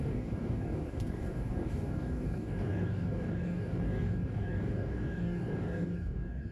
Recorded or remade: remade